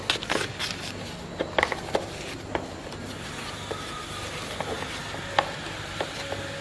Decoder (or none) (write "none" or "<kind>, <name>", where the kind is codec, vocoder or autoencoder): none